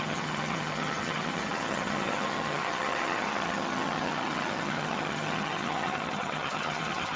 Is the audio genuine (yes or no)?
no